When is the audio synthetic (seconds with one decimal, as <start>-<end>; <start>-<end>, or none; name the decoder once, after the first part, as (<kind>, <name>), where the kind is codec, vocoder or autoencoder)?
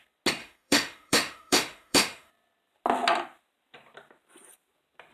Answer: 0.4-2.3 (autoencoder, DAC-VAE)